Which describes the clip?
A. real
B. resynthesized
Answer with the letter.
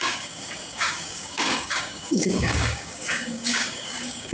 B